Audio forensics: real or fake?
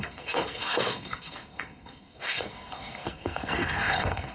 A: fake